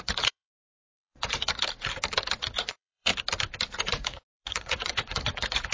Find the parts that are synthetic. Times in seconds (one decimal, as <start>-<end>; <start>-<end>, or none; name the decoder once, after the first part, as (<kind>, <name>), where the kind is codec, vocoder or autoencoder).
0.0-1.5 (vocoder, Vocos); 2.4-3.1; 3.8-5.7